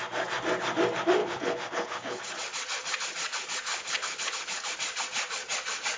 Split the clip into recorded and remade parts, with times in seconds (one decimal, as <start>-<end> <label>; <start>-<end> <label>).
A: 0.0-1.2 recorded; 1.2-2.2 remade; 2.2-3.7 recorded; 3.7-4.3 remade; 4.3-6.0 recorded